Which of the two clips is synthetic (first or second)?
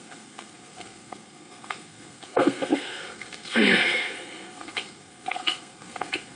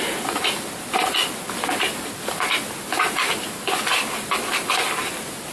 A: first